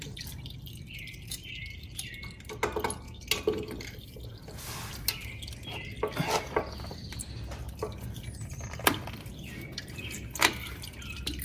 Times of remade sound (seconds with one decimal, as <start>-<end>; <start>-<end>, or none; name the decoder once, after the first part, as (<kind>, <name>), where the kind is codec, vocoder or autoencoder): 0.0-1.6 (vocoder, BigVGAN v2); 6.6-11.4